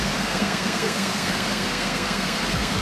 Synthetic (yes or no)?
yes